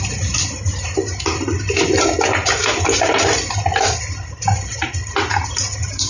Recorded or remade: recorded